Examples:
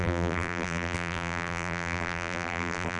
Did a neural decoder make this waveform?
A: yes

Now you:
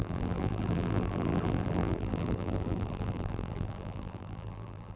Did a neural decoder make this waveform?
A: yes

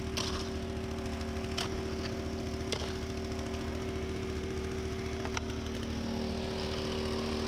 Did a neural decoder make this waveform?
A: no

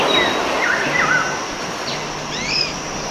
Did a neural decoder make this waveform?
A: yes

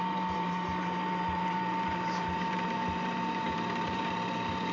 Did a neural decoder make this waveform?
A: yes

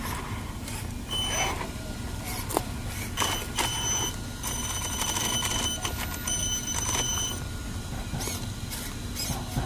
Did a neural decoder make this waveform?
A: no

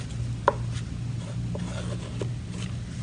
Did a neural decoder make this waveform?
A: no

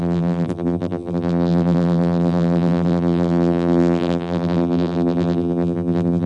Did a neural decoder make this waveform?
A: yes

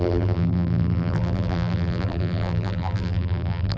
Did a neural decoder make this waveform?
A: yes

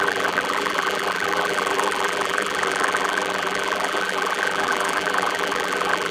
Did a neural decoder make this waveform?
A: yes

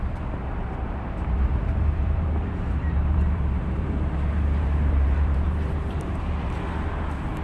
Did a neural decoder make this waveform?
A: yes